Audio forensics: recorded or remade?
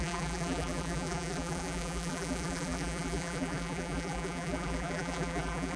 remade